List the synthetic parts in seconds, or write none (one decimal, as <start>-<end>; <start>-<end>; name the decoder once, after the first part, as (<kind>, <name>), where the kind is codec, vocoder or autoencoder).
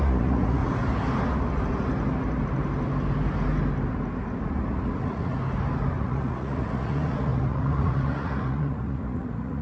0.0-0.6 (vocoder, Vocos); 4.5-5.4; 6.0-9.6